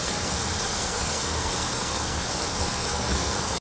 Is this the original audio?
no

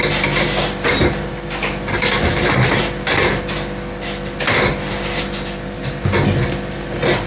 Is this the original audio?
yes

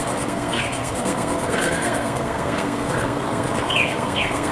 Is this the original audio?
no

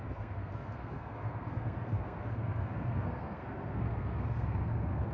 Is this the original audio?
no